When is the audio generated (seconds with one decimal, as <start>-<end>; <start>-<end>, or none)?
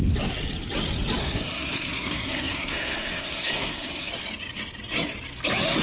1.2-4.1